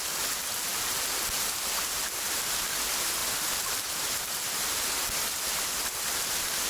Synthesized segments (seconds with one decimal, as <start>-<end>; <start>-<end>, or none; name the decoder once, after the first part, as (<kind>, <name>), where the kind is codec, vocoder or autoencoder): 0.0-3.2 (vocoder, BigVGAN v2); 4.3-6.7

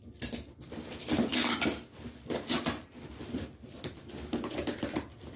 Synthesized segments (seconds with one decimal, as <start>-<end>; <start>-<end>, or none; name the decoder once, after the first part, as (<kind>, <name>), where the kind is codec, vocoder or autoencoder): none

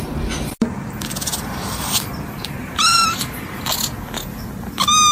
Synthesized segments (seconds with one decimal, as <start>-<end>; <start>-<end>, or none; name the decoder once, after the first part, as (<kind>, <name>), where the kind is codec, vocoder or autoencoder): 1.3-3.7 (vocoder, BigVGAN v2)

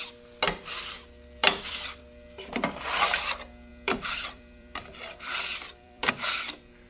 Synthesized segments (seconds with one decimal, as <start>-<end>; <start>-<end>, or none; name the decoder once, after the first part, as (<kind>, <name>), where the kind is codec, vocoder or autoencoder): 1.4-2.0 (vocoder, BigVGAN v2); 3.7-6.1

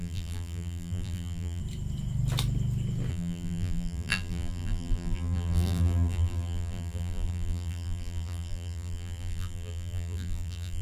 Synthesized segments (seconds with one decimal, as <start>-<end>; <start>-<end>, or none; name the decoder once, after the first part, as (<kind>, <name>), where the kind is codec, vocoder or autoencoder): 0.0-1.6 (vocoder, BigVGAN v2); 3.1-10.8

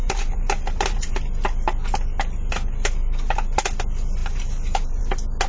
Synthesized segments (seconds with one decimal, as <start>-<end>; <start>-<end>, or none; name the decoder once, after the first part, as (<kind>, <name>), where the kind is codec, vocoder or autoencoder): 0.0-1.1 (vocoder, BigVGAN v2); 4.2-5.0